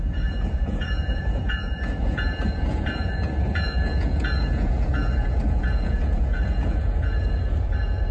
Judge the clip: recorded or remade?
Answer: remade